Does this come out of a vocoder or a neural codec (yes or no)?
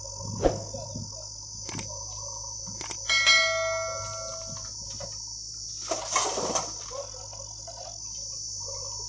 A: no